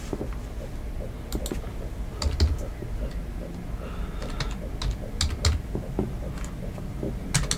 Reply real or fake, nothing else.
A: real